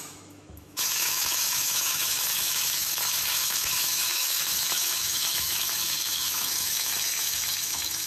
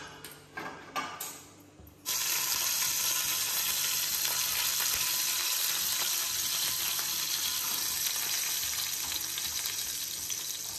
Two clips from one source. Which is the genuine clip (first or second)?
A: second